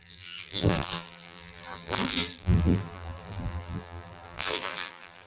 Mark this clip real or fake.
fake